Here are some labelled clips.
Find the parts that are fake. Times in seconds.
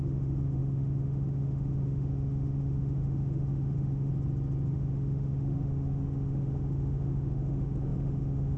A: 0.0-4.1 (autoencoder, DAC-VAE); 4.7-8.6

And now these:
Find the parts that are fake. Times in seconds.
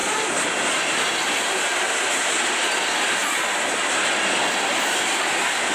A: none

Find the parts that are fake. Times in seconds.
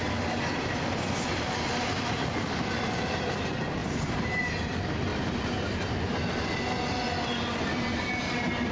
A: 3.8-4.4 (vocoder, BigVGAN v2); 5.1-6.2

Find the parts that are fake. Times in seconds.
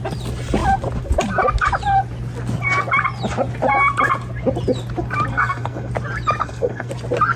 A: 5.3-5.9 (codec, SNAC); 6.4-6.9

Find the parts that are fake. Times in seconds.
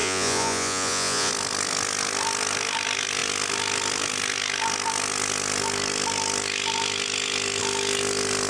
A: 0.0-1.3 (vocoder, Vocos)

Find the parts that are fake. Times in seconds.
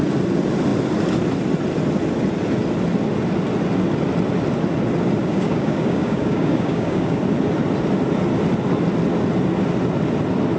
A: 5.2-7.2 (codec, DAC)